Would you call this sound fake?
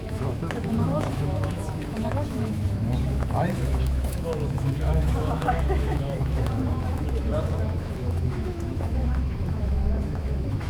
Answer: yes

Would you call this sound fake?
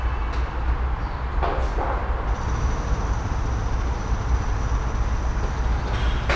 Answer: no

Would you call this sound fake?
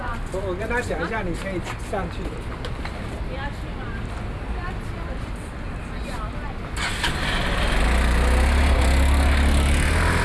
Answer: no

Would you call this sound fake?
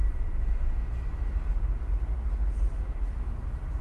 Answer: no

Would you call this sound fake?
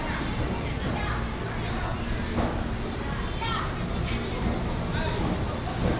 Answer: no